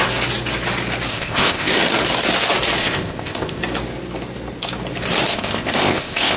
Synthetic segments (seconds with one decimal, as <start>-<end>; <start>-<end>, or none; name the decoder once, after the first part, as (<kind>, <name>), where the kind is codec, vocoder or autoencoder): 1.1-1.7 (codec, ZipCodec); 2.8-3.6; 5.3-6.4